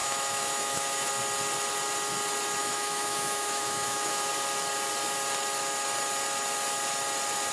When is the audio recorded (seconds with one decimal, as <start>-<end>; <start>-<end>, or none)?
1.1-2.6; 4.3-7.5